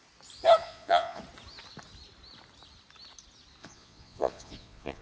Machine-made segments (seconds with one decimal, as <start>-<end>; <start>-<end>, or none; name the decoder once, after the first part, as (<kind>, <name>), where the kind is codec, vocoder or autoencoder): 0.6-1.2 (vocoder, Vocos); 3.6-5.0